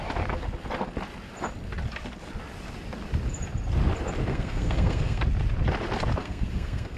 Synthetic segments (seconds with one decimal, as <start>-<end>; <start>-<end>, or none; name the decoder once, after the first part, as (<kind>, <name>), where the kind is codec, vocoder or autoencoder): 4.3-5.2 (codec, SNAC); 6.2-7.0